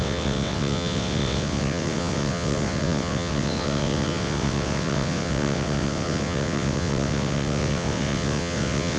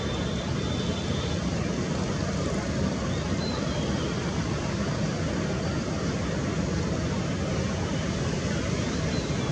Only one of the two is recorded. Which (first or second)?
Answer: second